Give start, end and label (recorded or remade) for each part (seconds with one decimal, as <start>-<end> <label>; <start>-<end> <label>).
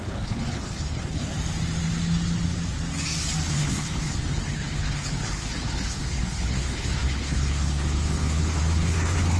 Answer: 0.0-1.3 remade; 1.3-3.5 recorded; 3.5-9.4 remade